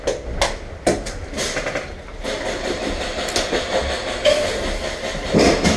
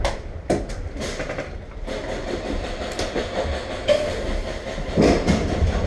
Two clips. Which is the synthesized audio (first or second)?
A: second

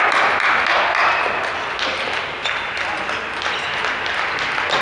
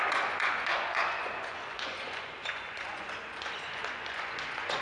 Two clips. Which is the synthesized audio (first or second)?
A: second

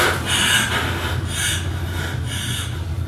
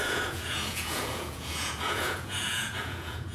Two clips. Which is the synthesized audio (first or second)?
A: second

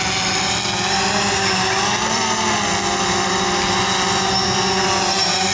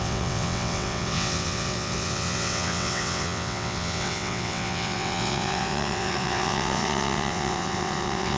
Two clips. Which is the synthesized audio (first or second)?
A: second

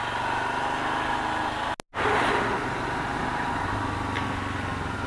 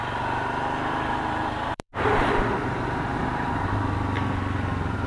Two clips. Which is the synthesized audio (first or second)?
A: second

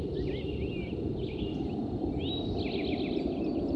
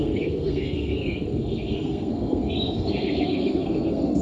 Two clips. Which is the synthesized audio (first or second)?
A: second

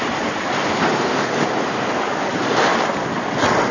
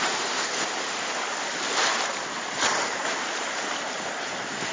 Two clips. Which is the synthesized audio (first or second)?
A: second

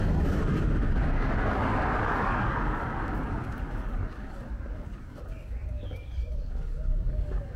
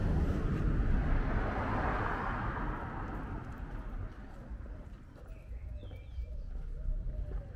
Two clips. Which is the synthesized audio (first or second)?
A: first